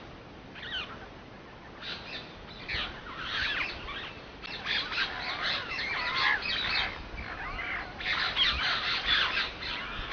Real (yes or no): yes